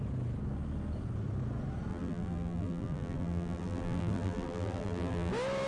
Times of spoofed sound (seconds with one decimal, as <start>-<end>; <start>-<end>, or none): 1.9-5.3